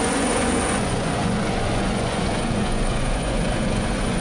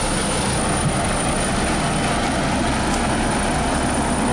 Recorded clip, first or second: second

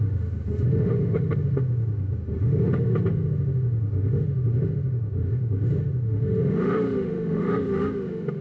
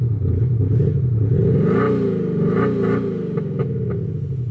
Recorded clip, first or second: second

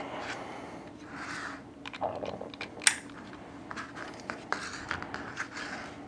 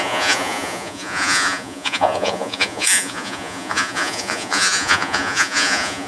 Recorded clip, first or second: first